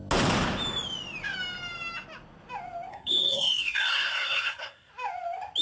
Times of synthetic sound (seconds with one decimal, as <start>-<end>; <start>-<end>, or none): 2.9-4.9